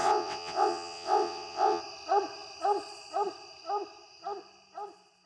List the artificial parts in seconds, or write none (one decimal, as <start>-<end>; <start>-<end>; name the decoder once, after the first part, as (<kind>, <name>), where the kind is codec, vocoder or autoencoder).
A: 0.0-1.8 (vocoder, WaveNeXt)

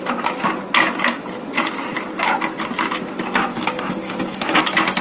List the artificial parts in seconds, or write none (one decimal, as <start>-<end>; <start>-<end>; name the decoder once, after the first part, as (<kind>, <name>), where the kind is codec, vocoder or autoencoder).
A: 3.5-4.6 (codec, DAC)

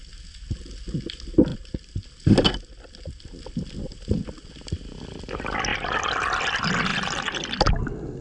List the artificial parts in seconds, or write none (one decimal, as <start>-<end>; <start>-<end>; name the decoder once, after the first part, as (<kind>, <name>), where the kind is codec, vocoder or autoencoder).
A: none

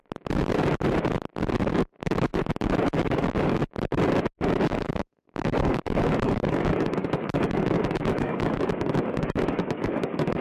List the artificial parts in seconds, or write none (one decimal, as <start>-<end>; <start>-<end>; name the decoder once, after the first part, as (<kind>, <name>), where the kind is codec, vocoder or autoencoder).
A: 1.7-2.3 (codec, DAC); 3.0-3.6; 4.6-10.4

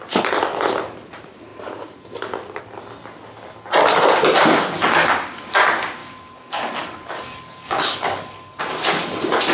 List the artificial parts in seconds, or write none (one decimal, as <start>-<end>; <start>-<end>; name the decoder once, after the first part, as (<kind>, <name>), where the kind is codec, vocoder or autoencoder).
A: 6.0-8.6 (codec, DAC)

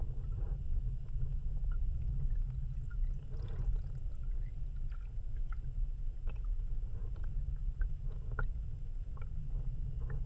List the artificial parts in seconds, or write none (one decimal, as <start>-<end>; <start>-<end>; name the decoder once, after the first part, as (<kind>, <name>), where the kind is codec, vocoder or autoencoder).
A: 0.0-10.3 (vocoder, Vocos)